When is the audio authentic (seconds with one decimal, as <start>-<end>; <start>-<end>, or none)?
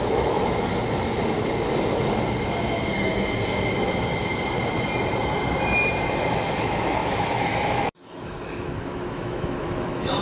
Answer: 0.7-2.7; 3.1-6.4